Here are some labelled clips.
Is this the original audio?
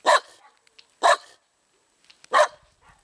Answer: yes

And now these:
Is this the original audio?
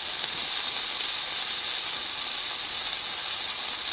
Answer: yes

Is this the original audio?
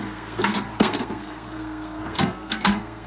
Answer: no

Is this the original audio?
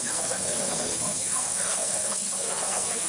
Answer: no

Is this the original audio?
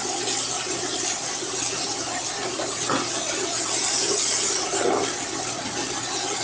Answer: yes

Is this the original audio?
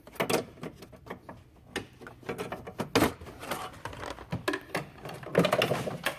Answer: yes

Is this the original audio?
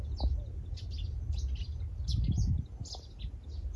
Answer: yes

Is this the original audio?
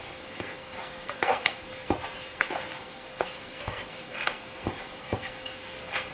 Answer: no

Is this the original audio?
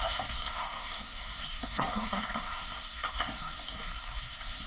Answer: no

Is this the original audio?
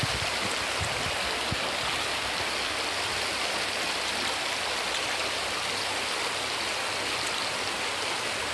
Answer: yes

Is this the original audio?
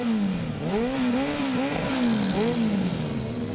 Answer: yes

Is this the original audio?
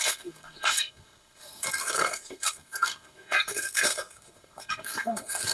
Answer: no